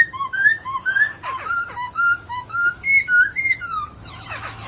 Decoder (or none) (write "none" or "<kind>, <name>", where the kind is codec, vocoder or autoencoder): autoencoder, DAC-VAE